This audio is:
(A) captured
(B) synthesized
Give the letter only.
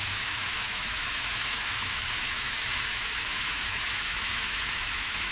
B